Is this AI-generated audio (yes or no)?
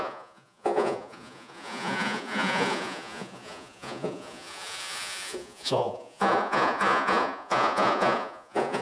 yes